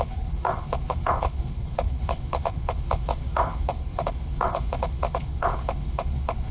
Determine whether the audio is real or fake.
fake